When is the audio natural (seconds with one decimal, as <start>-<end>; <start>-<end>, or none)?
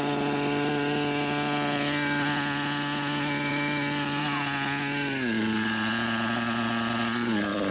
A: 0.0-7.7